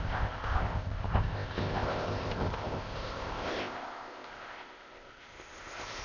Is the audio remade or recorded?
remade